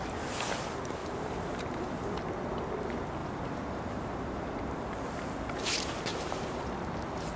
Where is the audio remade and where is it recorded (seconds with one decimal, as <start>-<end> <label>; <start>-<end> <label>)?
0.0-1.0 recorded; 1.0-1.9 remade; 1.9-3.2 recorded; 3.2-4.6 remade; 4.6-6.1 recorded; 6.1-6.6 remade; 6.6-7.4 recorded